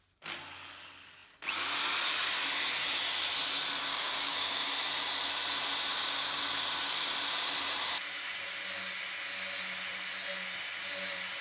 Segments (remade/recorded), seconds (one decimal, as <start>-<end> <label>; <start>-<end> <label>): 0.0-3.9 recorded; 3.9-4.7 remade; 4.7-5.9 recorded; 5.9-6.4 remade; 6.4-11.4 recorded